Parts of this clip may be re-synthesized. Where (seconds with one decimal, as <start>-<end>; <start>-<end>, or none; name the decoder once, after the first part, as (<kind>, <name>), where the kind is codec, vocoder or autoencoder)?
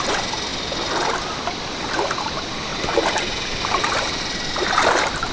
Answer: none